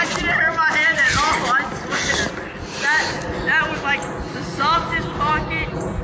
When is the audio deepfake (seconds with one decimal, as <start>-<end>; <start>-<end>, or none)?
none